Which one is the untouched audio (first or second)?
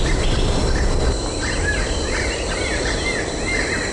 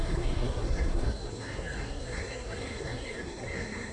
first